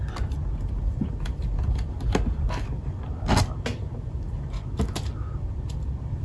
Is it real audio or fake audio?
real